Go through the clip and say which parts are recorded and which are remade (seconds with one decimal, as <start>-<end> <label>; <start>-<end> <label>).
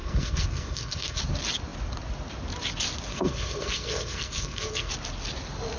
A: 0.0-1.2 remade; 1.2-3.1 recorded; 3.1-4.9 remade; 4.9-5.8 recorded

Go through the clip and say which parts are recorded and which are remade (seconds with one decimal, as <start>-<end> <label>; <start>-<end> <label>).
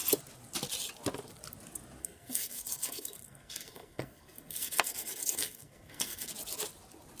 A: 0.0-2.0 recorded; 2.0-6.3 remade; 6.3-7.2 recorded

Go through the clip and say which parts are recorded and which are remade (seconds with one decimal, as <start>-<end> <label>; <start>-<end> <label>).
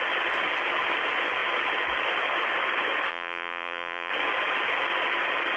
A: 0.0-3.1 recorded; 3.1-4.1 remade; 4.1-5.6 recorded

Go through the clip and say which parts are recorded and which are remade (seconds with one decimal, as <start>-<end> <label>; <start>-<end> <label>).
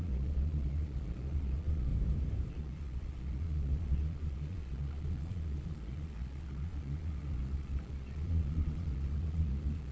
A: 0.0-1.9 remade; 1.9-2.5 recorded; 2.5-9.9 remade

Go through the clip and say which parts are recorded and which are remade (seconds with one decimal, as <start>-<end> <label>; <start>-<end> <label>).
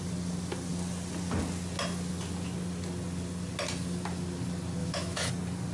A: 0.0-4.8 recorded; 4.8-5.3 remade; 5.3-5.7 recorded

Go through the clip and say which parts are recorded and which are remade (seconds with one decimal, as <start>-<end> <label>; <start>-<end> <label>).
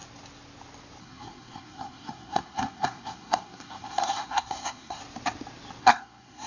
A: 0.0-1.0 recorded; 1.0-5.0 remade; 5.0-5.8 recorded; 5.8-6.5 remade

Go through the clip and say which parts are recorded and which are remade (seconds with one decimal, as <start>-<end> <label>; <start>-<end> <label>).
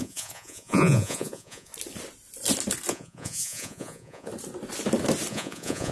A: 0.0-1.7 remade; 1.7-2.9 recorded; 2.9-4.3 remade; 4.3-5.3 recorded; 5.3-5.9 remade